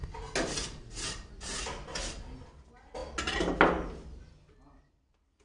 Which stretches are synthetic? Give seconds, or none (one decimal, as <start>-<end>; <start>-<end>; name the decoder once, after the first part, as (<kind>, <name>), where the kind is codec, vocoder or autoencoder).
none